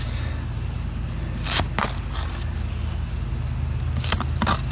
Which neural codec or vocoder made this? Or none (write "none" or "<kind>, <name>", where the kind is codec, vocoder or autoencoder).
none